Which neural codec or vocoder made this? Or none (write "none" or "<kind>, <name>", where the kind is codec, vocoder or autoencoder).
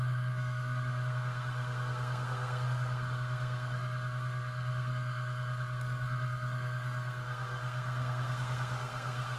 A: codec, SNAC